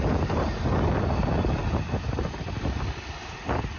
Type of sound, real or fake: real